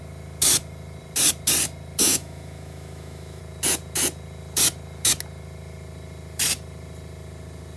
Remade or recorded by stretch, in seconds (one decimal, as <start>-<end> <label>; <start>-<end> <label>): 0.0-2.0 recorded; 2.0-3.4 remade; 3.4-7.8 recorded